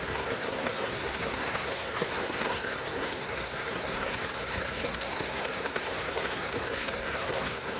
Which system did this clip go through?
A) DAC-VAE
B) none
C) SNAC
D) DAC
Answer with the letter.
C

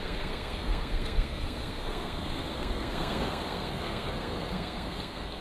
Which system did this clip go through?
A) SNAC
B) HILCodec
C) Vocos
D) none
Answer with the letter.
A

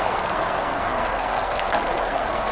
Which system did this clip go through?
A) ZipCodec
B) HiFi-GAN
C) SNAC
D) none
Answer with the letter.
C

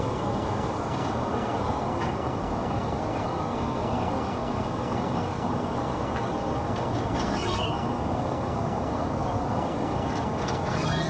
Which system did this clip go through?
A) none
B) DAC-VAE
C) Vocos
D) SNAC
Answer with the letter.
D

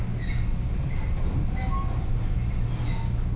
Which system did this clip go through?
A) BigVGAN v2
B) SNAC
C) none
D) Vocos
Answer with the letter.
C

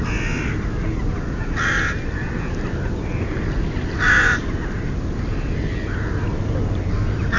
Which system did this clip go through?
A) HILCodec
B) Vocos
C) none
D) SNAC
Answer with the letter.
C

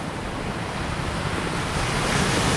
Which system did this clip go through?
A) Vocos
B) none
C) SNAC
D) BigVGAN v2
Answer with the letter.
B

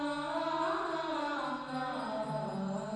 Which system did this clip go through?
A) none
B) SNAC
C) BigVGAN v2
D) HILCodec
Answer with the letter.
A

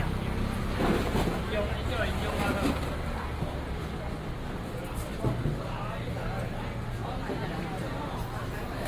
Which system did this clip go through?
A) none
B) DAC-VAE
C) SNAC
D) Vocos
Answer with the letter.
A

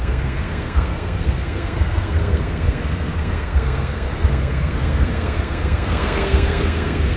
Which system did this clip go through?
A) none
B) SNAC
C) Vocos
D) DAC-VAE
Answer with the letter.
B